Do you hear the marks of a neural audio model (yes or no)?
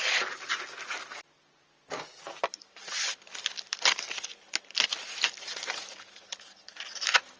no